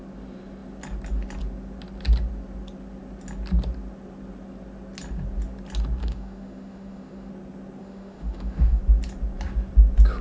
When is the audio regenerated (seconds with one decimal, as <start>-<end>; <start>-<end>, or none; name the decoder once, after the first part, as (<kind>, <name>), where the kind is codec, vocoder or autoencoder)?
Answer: 6.0-7.3 (autoencoder, DAC-VAE); 7.8-8.8